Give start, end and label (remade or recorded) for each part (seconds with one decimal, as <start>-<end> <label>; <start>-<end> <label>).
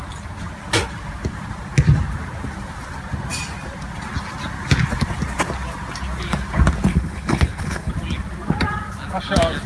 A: 0.0-6.9 recorded; 6.9-7.9 remade; 7.9-9.7 recorded